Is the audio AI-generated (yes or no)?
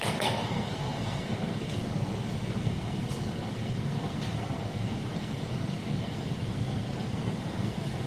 yes